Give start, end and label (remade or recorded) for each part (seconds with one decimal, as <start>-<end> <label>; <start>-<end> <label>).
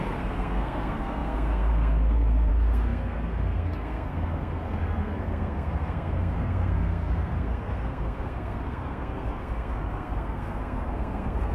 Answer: 0.0-11.5 remade